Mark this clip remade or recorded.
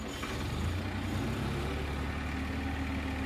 recorded